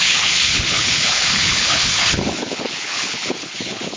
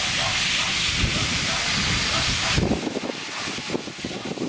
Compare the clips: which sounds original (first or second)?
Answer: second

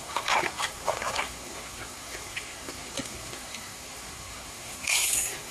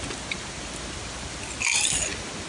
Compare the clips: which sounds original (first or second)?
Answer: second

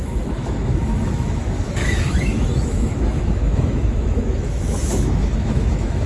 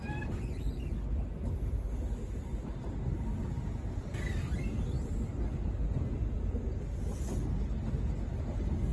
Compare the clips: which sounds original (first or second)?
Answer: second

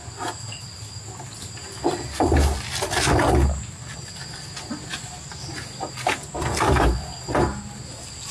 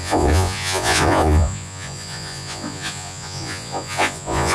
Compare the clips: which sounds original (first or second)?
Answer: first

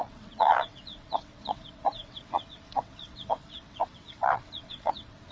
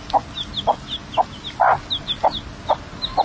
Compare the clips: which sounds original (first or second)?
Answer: second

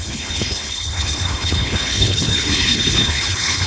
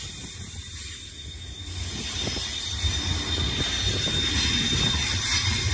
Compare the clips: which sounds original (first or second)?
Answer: second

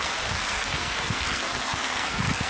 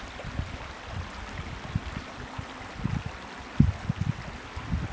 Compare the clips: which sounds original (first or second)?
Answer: second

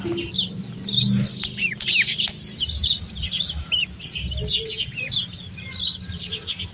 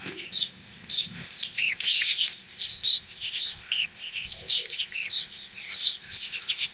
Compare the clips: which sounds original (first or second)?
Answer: first